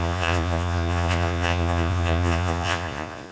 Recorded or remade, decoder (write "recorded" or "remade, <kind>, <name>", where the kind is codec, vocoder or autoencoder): remade, vocoder, Vocos